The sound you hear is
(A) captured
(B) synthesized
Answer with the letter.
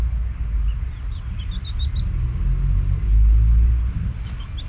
A